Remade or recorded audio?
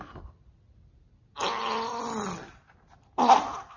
recorded